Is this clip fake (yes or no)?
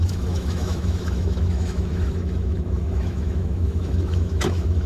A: yes